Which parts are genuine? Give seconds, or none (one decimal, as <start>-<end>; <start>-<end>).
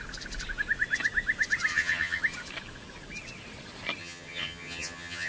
0.0-1.7; 2.2-4.0